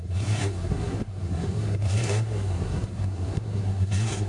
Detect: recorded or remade remade